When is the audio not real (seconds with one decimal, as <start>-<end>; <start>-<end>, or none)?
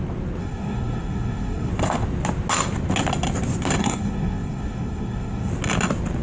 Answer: 0.4-1.7; 3.8-5.5